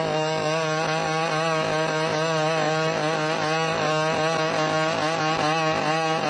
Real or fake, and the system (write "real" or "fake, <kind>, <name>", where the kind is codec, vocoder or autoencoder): real